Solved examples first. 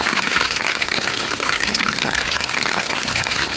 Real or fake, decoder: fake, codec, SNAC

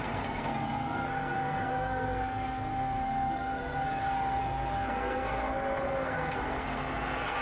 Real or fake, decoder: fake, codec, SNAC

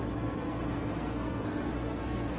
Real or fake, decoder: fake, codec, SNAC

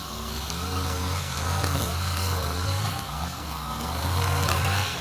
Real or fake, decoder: fake, codec, SNAC